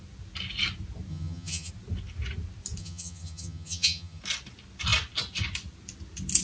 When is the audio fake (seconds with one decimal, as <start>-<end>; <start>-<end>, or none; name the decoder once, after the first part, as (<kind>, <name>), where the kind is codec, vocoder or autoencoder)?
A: 1.1-1.7 (vocoder, HiFi-GAN); 2.8-4.2